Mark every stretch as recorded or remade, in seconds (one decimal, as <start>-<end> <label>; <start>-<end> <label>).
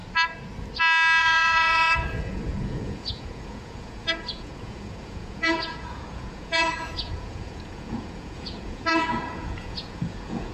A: 0.0-1.2 recorded; 1.2-10.5 remade